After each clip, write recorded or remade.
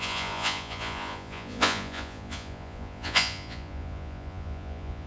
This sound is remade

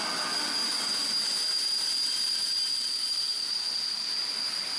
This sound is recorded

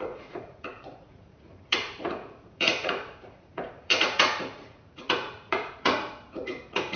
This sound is remade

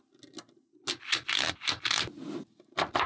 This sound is recorded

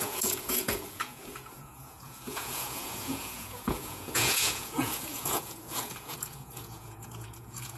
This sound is remade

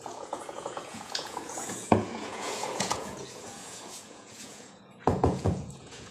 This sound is remade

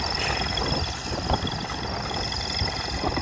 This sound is recorded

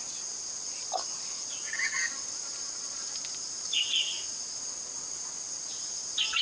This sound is recorded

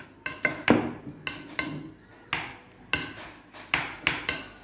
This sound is recorded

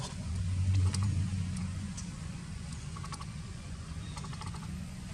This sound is remade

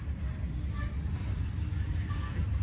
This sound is recorded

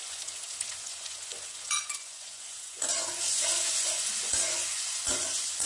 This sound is remade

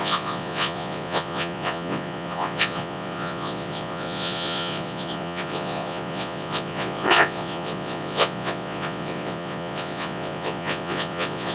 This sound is remade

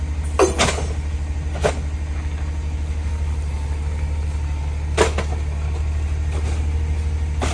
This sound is recorded